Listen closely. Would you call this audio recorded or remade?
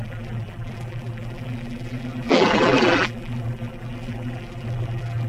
remade